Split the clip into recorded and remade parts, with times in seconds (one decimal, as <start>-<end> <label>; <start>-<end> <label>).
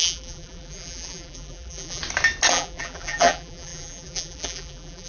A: 0.0-2.0 remade; 2.0-2.5 recorded; 2.5-5.1 remade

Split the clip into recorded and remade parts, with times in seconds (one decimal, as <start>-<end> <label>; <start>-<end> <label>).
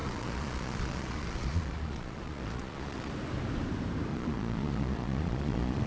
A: 0.0-3.1 remade; 3.1-4.1 recorded; 4.1-5.9 remade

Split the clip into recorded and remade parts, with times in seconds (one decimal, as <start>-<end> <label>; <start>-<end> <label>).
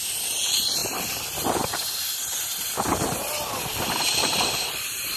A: 0.0-0.8 recorded; 0.8-1.3 remade; 1.3-2.9 recorded; 2.9-5.2 remade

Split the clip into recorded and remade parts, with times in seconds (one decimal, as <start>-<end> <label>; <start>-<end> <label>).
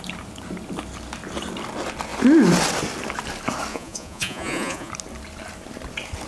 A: 0.0-3.7 recorded; 3.7-4.9 remade; 4.9-6.3 recorded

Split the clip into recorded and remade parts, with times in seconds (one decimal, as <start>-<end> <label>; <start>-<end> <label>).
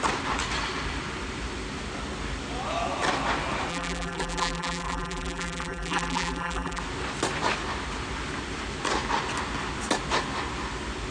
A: 0.0-3.7 recorded; 3.7-6.8 remade; 6.8-11.1 recorded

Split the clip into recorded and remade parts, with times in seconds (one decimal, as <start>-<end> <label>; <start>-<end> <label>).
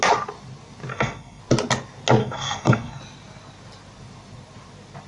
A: 0.0-0.9 recorded; 0.9-1.4 remade; 1.4-2.2 recorded; 2.2-3.0 remade; 3.0-5.1 recorded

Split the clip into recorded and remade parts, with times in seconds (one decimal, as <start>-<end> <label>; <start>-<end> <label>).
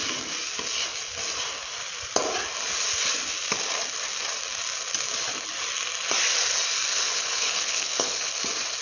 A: 0.0-6.9 recorded; 6.9-8.3 remade; 8.3-8.8 recorded